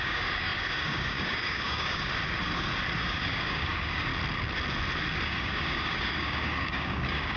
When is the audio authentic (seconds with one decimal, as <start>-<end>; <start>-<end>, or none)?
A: 2.1-3.0; 4.1-5.3